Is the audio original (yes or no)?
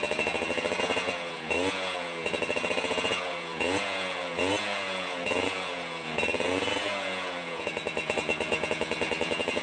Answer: no